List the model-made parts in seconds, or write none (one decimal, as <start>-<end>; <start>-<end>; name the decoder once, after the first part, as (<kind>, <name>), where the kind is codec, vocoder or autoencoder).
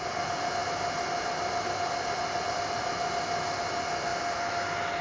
none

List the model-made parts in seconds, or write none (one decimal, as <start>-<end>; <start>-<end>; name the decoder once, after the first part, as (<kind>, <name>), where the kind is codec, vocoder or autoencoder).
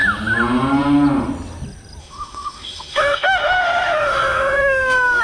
2.0-5.2 (autoencoder, DAC-VAE)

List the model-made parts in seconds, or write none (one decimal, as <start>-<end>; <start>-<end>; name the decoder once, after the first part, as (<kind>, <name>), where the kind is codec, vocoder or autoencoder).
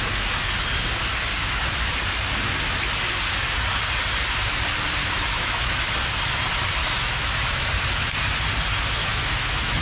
5.0-5.9 (autoencoder, DAC-VAE); 6.8-7.7; 9.0-9.8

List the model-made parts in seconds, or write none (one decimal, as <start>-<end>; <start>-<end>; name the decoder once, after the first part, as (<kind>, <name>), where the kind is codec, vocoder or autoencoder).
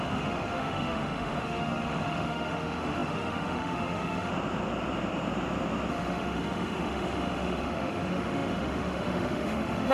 0.0-4.3 (autoencoder, DAC-VAE); 5.9-9.9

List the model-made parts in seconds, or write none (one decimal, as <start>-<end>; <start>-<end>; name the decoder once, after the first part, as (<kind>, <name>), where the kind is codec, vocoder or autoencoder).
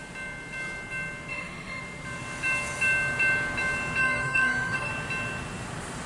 1.3-1.8 (autoencoder, DAC-VAE); 4.0-4.9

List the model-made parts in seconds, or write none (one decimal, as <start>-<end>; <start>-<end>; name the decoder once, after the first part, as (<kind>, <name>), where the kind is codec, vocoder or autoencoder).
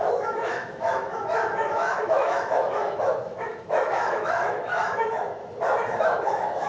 0.0-5.4 (autoencoder, DAC-VAE); 6.0-6.7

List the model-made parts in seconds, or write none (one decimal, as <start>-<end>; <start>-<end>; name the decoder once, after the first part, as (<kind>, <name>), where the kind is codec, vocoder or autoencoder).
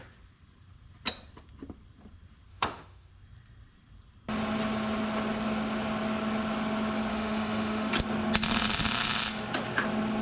2.5-3.1 (autoencoder, DAC-VAE); 7.1-7.9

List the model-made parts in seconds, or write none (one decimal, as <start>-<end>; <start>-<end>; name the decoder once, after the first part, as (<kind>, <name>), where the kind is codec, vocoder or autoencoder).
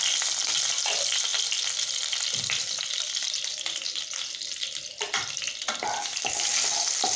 none